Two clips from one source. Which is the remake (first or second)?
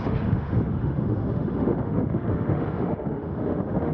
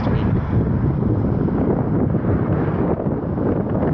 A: first